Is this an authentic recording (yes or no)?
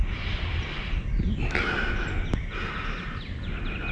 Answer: yes